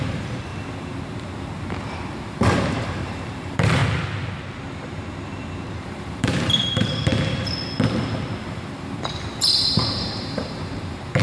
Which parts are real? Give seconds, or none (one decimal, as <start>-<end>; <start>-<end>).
0.5-2.2; 3.8-5.7; 7.1-8.4